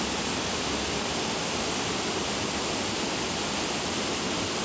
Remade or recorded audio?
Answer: recorded